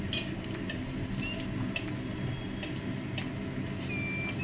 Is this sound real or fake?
real